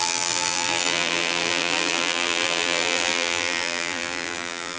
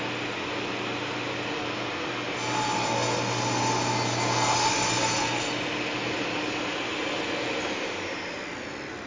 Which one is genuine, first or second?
second